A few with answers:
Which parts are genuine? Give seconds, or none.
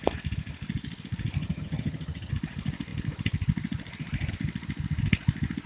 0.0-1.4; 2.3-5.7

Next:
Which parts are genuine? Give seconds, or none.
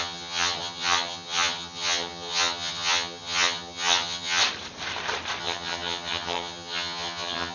4.4-5.4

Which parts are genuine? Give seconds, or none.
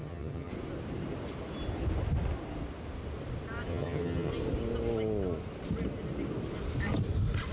0.5-3.7; 4.3-7.5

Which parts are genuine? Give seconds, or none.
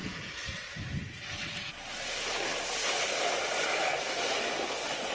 0.0-5.1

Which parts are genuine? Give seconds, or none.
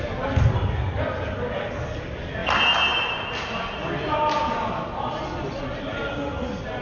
0.0-6.8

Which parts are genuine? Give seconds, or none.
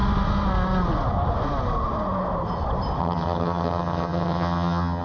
0.0-3.0